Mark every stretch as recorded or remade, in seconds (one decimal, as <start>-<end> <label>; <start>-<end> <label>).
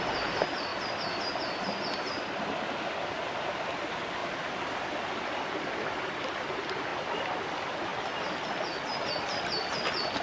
0.0-10.2 recorded